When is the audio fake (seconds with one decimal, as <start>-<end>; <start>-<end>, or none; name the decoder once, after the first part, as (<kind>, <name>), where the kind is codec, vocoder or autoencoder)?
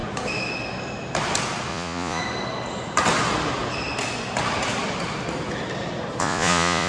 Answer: 1.7-2.2 (vocoder, Vocos); 6.2-6.9